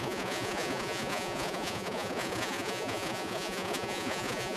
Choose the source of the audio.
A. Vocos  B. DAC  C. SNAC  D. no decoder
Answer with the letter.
A